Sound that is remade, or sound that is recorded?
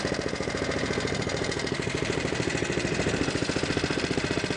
remade